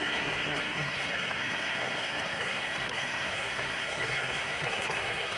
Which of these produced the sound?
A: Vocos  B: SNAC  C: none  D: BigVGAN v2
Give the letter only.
B